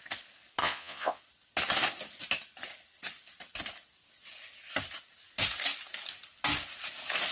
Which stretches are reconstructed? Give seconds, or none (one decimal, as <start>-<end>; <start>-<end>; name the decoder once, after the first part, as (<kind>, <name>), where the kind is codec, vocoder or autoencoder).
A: 0.6-1.2 (vocoder, Vocos)